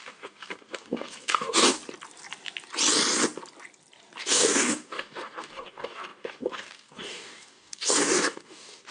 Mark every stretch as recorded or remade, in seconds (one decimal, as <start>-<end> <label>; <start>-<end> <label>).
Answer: 0.0-1.8 remade; 1.8-4.2 recorded; 4.2-8.9 remade